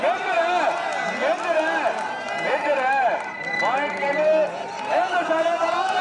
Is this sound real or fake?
real